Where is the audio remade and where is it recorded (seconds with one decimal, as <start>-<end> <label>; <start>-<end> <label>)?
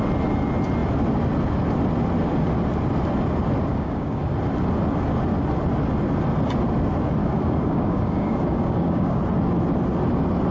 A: 0.0-3.7 recorded; 3.7-4.3 remade; 4.3-7.2 recorded; 7.2-9.2 remade; 9.2-10.5 recorded